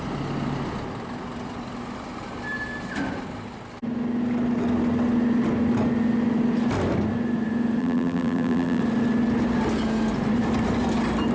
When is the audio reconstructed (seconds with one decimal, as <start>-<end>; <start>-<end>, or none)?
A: 7.8-8.8